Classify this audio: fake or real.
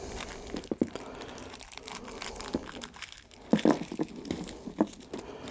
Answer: real